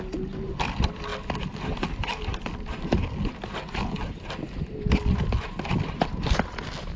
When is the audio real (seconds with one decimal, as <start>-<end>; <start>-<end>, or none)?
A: 0.0-7.0